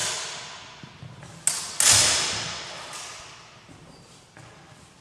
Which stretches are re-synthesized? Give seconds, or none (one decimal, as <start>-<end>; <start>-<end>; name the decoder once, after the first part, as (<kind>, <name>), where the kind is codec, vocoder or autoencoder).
none